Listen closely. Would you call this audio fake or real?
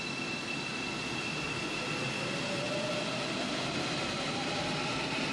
real